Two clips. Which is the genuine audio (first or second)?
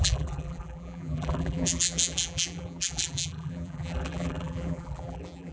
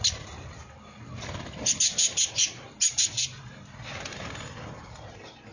second